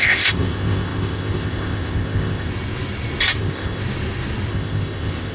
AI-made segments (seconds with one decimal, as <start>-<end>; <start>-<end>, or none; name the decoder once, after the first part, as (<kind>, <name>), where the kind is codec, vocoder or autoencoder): 0.0-2.5 (codec, ZipCodec); 3.4-3.8; 4.5-5.3

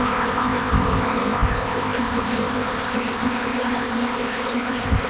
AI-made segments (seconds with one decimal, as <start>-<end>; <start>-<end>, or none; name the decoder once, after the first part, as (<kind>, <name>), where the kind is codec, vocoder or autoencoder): 0.0-5.1 (codec, ZipCodec)

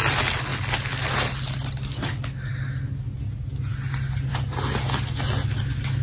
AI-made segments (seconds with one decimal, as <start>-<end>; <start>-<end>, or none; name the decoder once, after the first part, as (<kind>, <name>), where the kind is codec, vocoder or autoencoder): none

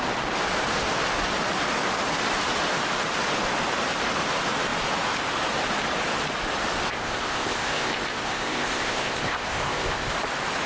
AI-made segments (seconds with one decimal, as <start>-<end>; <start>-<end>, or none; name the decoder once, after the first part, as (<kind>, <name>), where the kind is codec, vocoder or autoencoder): 6.9-10.1 (codec, ZipCodec)

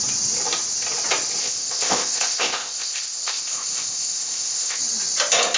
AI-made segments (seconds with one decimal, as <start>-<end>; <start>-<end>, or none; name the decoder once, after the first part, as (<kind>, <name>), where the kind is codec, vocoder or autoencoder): 1.4-4.8 (codec, ZipCodec)

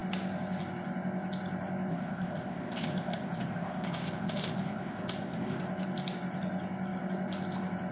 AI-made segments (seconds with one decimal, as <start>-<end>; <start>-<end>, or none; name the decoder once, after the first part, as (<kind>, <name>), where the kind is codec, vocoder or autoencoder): 1.9-5.6 (codec, ZipCodec)

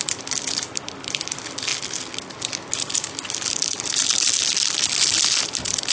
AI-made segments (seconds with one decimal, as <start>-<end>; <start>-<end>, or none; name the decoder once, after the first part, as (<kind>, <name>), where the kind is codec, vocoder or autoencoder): none

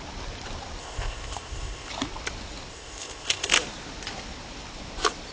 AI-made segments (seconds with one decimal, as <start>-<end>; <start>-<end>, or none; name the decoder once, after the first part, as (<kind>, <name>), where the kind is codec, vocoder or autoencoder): 0.8-1.9 (codec, ZipCodec); 2.7-3.5